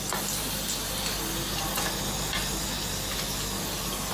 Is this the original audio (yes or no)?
yes